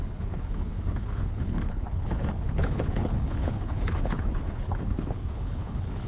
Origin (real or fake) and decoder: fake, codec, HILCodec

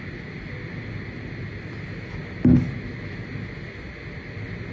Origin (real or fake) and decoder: real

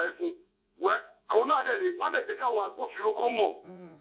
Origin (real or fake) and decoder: fake, vocoder, Vocos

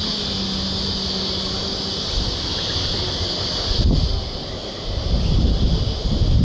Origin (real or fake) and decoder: real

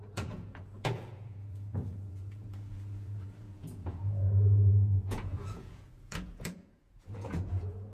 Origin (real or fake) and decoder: fake, vocoder, Vocos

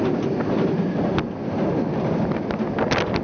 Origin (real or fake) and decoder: real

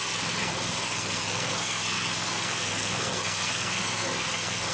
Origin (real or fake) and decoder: fake, codec, SNAC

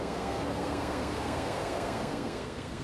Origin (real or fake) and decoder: fake, codec, SNAC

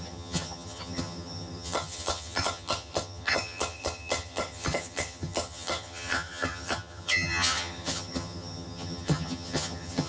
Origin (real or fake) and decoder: fake, vocoder, HiFi-GAN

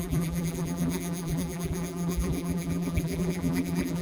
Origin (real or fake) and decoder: fake, vocoder, BigVGAN v2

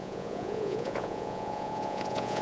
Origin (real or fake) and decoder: fake, vocoder, Vocos